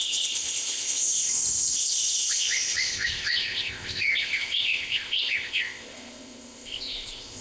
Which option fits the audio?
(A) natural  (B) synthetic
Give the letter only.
B